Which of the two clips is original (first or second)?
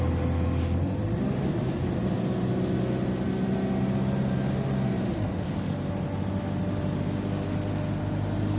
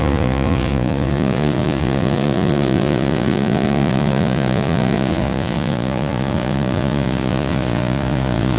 first